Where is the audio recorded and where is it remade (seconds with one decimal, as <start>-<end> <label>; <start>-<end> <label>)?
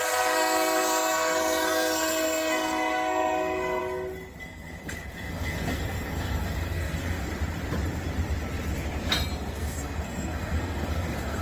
0.0-3.8 remade; 3.8-4.4 recorded; 4.4-7.3 remade; 7.3-9.5 recorded; 9.5-11.4 remade